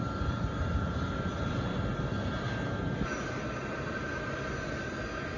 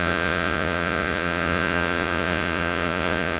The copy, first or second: second